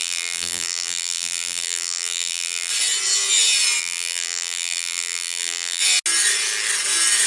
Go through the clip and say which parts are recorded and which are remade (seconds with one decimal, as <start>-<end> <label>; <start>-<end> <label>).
0.0-2.7 remade; 2.7-3.8 recorded; 3.8-5.8 remade; 5.8-7.3 recorded